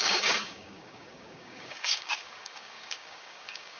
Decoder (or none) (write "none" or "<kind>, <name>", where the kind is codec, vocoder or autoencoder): codec, DAC